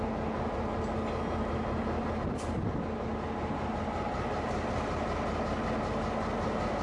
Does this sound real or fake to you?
real